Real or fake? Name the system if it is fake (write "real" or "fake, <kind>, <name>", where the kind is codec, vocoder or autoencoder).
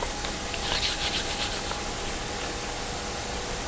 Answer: real